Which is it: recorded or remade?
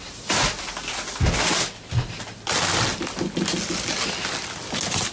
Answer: recorded